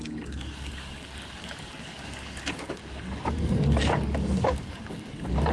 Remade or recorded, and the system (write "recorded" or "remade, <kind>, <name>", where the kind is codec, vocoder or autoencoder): remade, codec, DAC